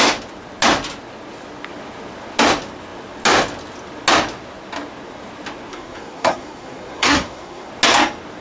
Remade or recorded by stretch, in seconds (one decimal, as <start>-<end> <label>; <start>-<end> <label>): 0.0-5.7 recorded; 5.7-7.7 remade; 7.7-8.4 recorded